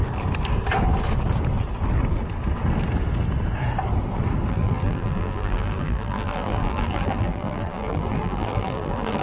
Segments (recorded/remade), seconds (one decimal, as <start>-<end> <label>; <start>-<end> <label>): 0.0-4.5 recorded; 4.5-9.2 remade